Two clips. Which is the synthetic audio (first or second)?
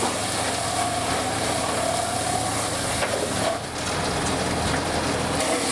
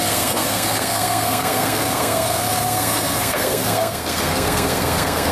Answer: second